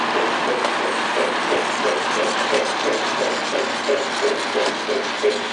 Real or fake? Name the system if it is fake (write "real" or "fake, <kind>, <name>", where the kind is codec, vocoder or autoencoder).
real